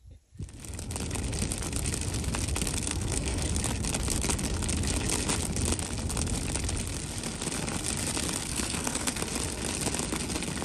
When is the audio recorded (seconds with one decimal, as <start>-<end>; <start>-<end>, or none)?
0.0-2.9; 3.5-8.5; 9.2-10.6